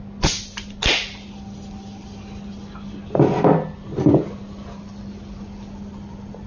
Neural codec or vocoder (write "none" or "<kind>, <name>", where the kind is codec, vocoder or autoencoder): none